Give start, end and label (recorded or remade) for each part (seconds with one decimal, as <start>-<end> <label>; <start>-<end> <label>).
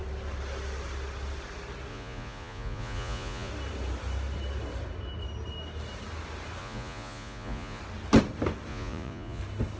0.0-1.9 recorded; 1.9-3.5 remade; 3.5-6.6 recorded; 6.6-7.8 remade; 7.8-8.7 recorded; 8.7-9.4 remade; 9.4-9.8 recorded